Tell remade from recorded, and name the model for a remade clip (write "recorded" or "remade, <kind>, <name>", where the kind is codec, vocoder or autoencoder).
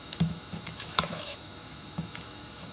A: remade, autoencoder, DAC-VAE